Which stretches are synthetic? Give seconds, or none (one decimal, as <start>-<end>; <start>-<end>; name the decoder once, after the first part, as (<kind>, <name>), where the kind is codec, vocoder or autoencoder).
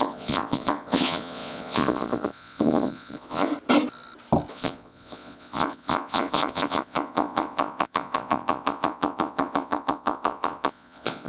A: 0.0-3.5 (vocoder, Vocos); 4.5-11.3